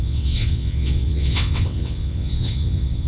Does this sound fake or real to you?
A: fake